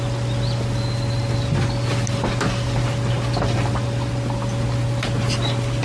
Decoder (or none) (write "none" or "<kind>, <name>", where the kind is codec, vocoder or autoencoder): none